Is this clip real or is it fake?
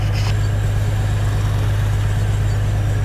real